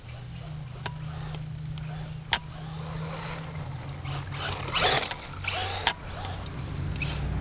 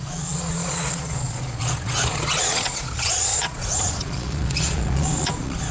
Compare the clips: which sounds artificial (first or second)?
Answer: second